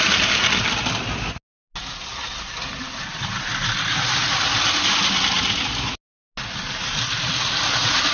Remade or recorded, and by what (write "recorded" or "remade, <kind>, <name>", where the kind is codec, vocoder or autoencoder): recorded